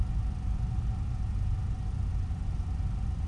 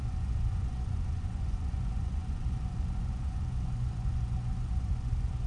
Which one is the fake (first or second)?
second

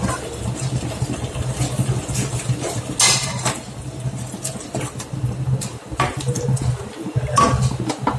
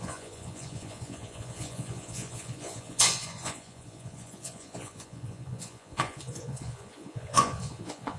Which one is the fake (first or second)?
second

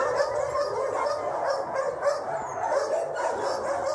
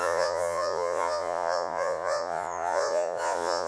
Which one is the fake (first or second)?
second